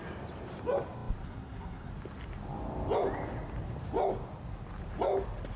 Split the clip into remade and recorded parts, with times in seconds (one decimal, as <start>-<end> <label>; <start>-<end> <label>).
0.0-1.2 recorded; 1.2-1.9 remade; 1.9-5.6 recorded